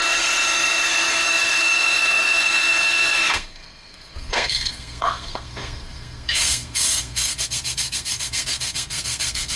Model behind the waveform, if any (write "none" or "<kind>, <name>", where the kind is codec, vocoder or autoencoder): codec, SNAC